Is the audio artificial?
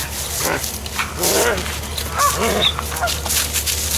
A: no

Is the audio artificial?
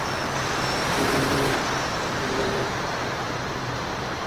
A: yes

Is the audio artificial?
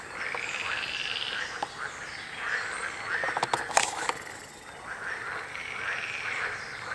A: no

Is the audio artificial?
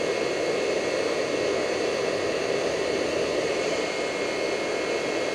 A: no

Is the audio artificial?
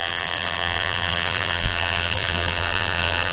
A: yes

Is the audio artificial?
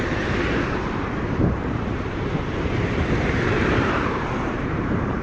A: yes